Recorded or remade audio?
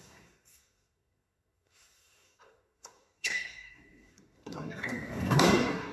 remade